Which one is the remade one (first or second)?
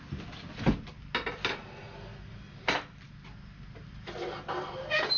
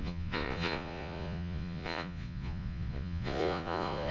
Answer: second